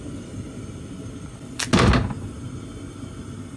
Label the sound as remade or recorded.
recorded